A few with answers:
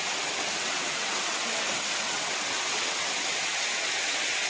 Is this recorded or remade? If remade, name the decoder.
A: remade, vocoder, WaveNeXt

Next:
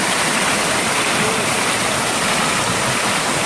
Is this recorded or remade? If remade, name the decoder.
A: recorded